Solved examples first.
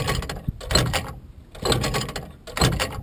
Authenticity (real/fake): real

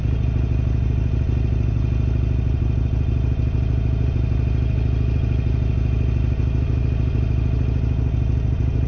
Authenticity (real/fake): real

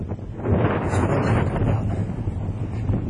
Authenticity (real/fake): real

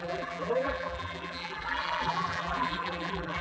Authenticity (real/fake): fake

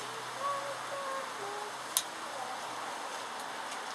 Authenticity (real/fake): real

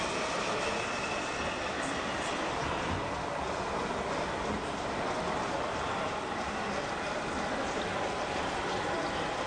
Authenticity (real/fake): real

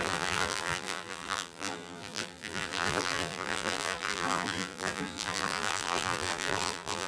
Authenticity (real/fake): fake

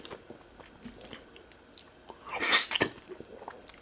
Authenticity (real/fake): real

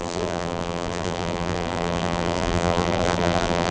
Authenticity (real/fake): fake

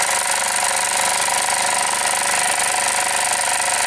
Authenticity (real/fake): real